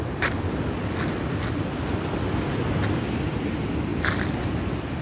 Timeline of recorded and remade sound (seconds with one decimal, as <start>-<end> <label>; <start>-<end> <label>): 0.0-5.0 recorded